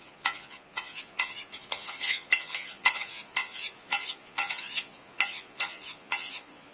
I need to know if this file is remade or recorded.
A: remade